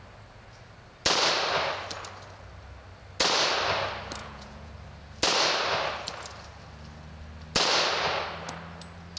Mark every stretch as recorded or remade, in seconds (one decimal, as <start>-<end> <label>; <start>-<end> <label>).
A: 0.0-4.2 recorded; 4.2-4.7 remade; 4.7-9.2 recorded